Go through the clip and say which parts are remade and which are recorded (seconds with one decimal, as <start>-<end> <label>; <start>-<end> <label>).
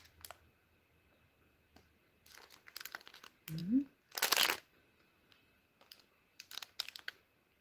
0.0-7.6 recorded